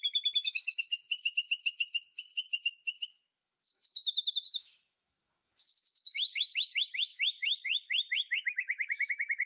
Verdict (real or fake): fake